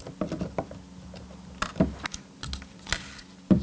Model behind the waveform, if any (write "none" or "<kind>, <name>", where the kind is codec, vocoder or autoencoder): none